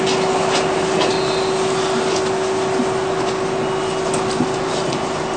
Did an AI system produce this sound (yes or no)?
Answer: no